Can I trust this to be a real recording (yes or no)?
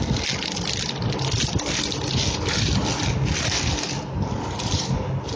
yes